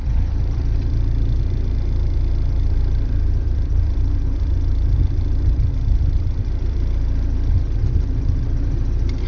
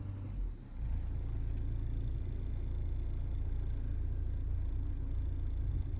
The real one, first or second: second